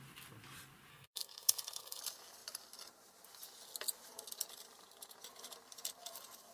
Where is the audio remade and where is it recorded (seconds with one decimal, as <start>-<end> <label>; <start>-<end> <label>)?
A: 0.0-0.9 recorded; 0.9-2.0 remade; 2.0-6.5 recorded